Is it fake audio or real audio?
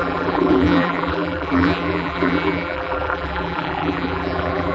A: fake